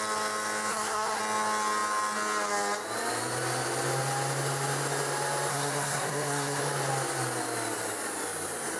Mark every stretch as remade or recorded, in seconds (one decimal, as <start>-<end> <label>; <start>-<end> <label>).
0.0-0.7 recorded; 0.7-1.2 remade; 1.2-5.5 recorded; 5.5-6.6 remade; 6.6-8.8 recorded

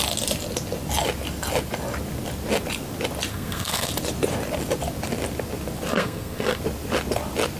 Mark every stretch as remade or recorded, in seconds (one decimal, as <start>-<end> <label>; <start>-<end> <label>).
0.0-3.3 recorded; 3.3-3.9 remade; 3.9-5.9 recorded; 5.9-6.6 remade; 6.6-7.6 recorded

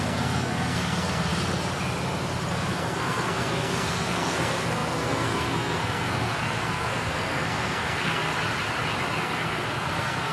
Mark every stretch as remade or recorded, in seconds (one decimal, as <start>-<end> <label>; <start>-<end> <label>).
0.0-1.3 remade; 1.3-2.5 recorded; 2.5-8.3 remade; 8.3-9.2 recorded; 9.2-10.3 remade

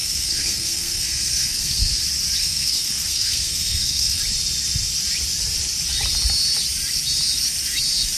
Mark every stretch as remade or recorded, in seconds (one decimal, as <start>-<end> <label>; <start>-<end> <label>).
0.0-1.9 remade; 1.9-2.4 recorded; 2.4-4.2 remade; 4.2-8.2 recorded

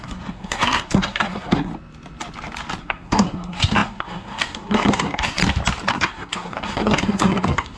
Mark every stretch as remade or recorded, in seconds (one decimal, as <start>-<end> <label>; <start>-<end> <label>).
0.0-1.7 remade; 1.7-2.8 recorded; 2.8-5.4 remade; 5.4-5.9 recorded; 5.9-7.8 remade

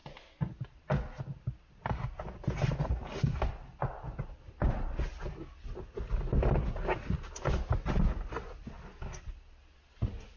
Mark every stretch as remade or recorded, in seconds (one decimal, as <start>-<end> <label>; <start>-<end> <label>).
0.0-10.4 recorded